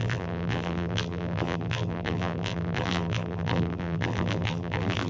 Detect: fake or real fake